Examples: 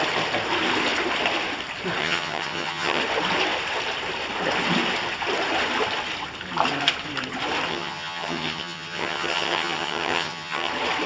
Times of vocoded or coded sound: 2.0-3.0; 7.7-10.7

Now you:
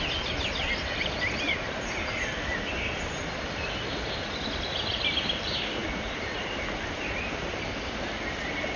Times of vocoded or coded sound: none

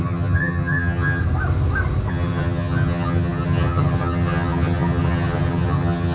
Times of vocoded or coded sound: 0.0-1.2; 2.1-6.1

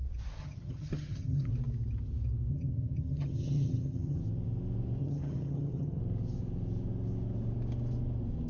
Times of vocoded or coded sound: 0.4-1.5; 2.5-4.2; 5.0-6.0

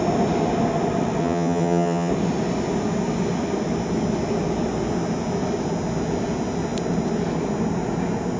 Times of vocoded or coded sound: 1.2-2.1

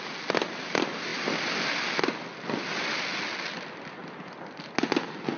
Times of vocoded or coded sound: none